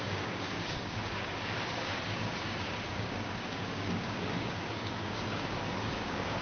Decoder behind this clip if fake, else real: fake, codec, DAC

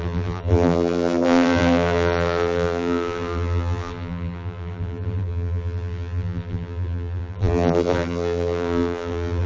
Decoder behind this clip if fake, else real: fake, vocoder, BigVGAN v2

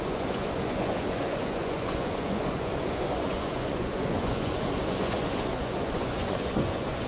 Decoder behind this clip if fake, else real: fake, vocoder, Vocos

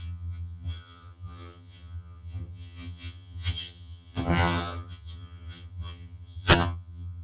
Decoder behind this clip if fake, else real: fake, vocoder, HiFi-GAN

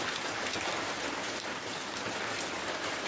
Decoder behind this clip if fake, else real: real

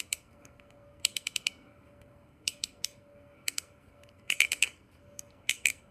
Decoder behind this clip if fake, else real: fake, codec, SNAC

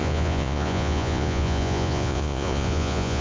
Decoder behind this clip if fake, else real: fake, vocoder, Vocos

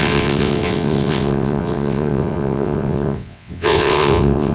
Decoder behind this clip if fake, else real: fake, vocoder, WaveNeXt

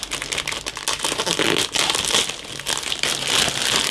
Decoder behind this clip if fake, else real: real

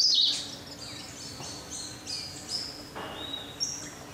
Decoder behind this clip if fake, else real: real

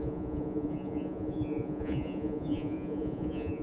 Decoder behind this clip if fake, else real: fake, vocoder, Vocos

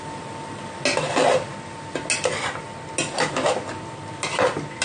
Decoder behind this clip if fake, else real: real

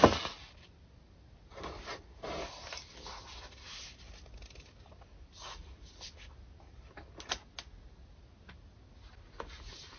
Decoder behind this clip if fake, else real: real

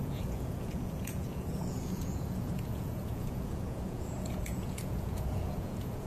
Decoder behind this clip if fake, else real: fake, vocoder, Vocos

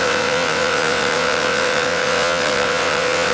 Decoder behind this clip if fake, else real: fake, vocoder, WaveNeXt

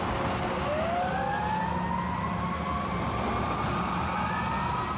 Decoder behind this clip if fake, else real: real